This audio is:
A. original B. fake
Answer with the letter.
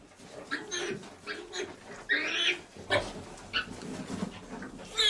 A